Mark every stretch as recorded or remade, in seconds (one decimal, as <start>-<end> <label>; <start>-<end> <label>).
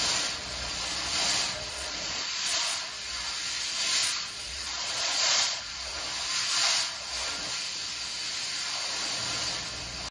0.0-1.7 recorded; 1.7-2.8 remade; 2.8-4.0 recorded; 4.0-6.0 remade; 6.0-10.1 recorded